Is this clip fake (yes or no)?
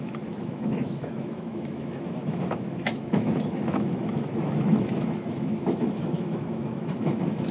yes